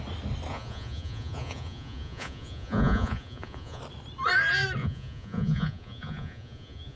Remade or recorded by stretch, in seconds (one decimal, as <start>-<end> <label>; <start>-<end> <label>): 0.0-0.5 recorded; 0.5-3.8 remade; 3.8-4.8 recorded; 4.8-7.0 remade